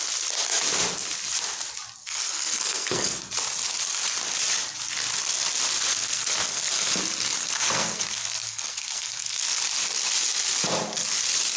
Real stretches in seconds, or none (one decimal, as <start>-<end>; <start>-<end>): 0.0-2.0; 3.3-5.9; 7.0-7.4; 9.6-11.6